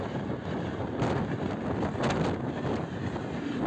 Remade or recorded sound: recorded